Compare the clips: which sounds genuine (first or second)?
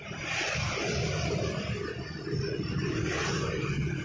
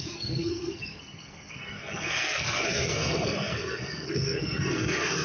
first